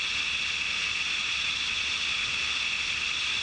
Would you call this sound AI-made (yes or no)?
no